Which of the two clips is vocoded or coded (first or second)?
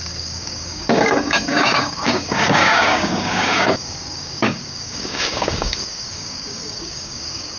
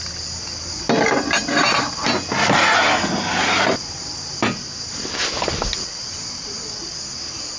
first